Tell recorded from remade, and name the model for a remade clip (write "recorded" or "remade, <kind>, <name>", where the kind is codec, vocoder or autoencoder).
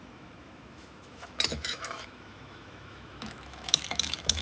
remade, autoencoder, DAC-VAE